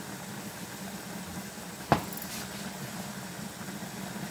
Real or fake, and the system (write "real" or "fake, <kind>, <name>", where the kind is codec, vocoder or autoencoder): real